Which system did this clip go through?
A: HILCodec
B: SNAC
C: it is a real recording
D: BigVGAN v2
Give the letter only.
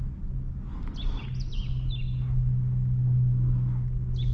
C